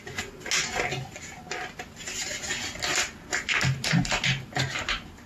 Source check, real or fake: real